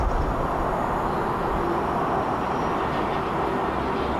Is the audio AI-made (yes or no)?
no